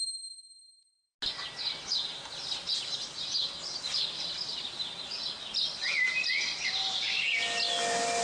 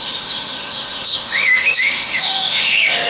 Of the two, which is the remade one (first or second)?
second